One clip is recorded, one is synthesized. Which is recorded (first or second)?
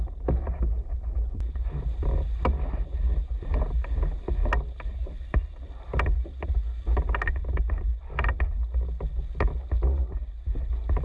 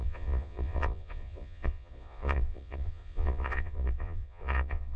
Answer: first